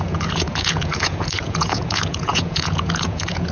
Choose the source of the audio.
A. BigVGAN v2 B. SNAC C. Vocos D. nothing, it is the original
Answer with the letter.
C